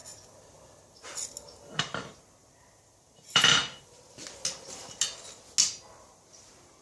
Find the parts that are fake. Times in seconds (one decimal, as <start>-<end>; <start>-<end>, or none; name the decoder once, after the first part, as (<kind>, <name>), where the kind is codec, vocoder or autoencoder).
1.8-3.6 (vocoder, BigVGAN v2); 6.0-6.8